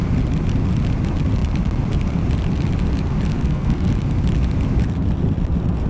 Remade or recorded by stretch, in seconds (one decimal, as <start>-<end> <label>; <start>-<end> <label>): 0.0-3.3 recorded; 3.3-3.9 remade; 3.9-5.9 recorded